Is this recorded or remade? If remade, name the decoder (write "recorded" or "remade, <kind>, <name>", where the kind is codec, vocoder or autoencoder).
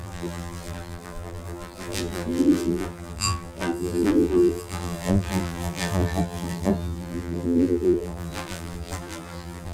remade, vocoder, BigVGAN v2